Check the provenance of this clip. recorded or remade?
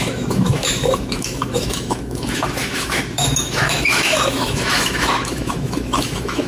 remade